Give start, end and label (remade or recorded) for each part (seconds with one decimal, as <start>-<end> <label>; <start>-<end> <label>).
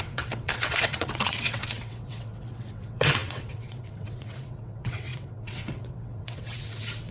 0.0-7.1 remade